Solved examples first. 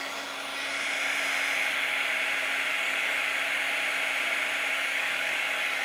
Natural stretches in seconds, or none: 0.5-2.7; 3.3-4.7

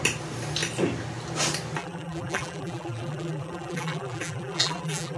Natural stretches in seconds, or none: 0.0-1.8

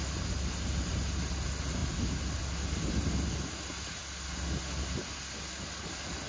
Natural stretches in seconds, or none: 0.0-6.3

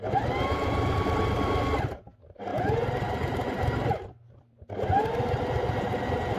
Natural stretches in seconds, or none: 0.0-6.4